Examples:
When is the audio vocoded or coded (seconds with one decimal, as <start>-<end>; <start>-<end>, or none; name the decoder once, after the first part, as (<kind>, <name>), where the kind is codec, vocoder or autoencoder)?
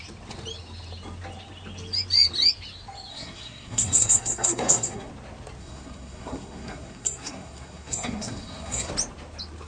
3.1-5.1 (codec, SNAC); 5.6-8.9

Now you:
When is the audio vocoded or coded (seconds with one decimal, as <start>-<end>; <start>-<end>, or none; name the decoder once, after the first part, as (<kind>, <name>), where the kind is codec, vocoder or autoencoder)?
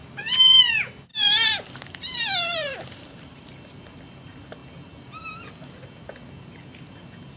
0.0-0.7 (vocoder, BigVGAN v2); 1.1-3.4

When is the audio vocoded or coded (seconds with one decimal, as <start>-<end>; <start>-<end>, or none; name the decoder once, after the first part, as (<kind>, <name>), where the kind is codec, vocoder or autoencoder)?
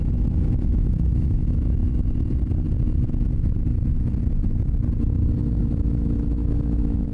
0.0-1.8 (autoencoder, DAC-VAE); 5.6-7.1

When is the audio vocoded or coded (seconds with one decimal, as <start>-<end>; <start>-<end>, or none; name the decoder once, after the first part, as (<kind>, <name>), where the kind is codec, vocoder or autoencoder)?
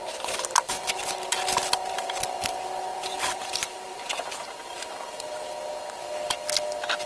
2.9-4.0 (vocoder, BigVGAN v2)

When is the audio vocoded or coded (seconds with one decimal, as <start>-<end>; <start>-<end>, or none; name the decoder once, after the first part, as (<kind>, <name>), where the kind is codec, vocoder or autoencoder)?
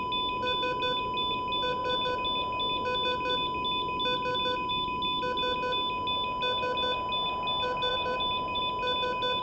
7.9-8.6 (vocoder, BigVGAN v2)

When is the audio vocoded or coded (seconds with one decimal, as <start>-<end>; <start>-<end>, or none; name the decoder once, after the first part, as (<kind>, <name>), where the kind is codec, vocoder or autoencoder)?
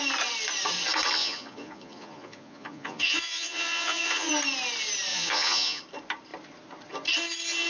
1.2-4.3 (vocoder, Vocos); 5.1-5.8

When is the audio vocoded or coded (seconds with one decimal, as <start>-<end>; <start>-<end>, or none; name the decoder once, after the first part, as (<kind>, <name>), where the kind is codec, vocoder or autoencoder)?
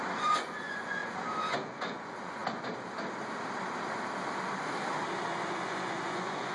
0.0-2.4 (vocoder, Vocos); 5.5-6.5